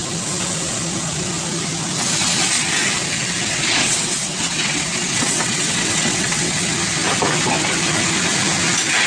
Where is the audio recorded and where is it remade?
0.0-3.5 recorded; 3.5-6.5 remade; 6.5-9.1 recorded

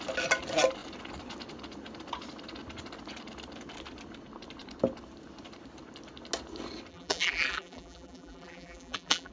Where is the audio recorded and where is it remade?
0.0-6.9 recorded; 6.9-9.3 remade

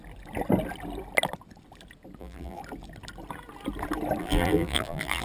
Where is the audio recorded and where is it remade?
0.0-2.2 recorded; 2.2-2.6 remade; 2.6-4.2 recorded; 4.2-5.2 remade